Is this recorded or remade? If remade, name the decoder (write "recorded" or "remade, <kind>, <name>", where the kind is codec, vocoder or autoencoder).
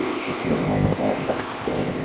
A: remade, codec, ZipCodec